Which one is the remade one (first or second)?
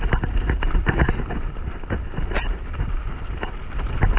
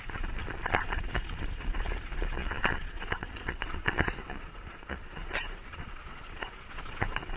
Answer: second